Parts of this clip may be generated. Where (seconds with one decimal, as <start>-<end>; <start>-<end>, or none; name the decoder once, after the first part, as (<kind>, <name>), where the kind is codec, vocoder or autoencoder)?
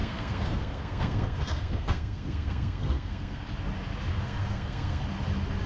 0.0-3.4 (codec, SNAC); 4.1-5.0